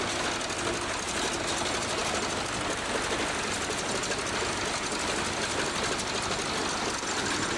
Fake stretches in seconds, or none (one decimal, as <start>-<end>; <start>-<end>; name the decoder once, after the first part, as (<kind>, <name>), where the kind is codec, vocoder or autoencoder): none